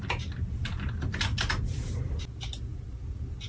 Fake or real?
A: real